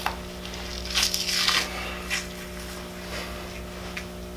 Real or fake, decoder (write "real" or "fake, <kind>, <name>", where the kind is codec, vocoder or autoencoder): real